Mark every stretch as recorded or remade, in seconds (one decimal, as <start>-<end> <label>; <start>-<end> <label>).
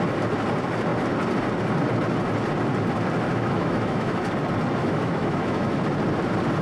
0.0-3.3 recorded; 3.3-4.2 remade; 4.2-4.8 recorded; 4.8-5.8 remade; 5.8-6.6 recorded